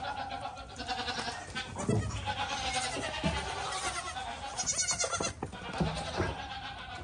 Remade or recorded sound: recorded